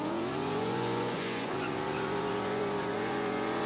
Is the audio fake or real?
fake